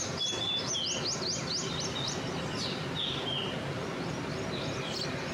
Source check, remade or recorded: recorded